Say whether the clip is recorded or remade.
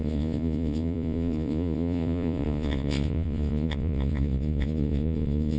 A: remade